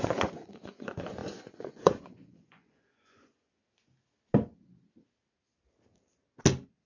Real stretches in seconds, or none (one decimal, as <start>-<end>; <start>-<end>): 3.6-6.9